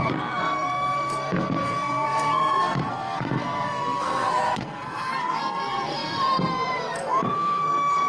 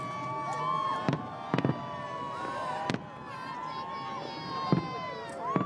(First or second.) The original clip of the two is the second